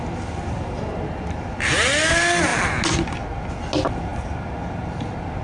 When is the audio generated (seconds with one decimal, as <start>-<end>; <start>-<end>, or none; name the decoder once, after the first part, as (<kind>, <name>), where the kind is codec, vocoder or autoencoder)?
none